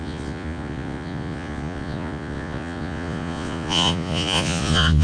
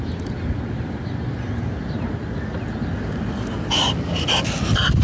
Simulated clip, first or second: first